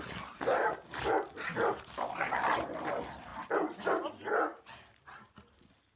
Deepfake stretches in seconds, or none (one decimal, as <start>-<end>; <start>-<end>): none